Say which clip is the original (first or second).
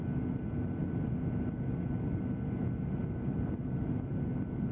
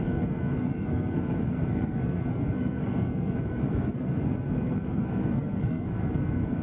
first